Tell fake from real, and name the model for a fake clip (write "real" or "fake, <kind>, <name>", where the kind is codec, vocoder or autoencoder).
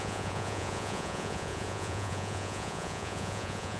fake, vocoder, Vocos